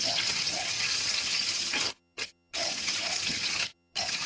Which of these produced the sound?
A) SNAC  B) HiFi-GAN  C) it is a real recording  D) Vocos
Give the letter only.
B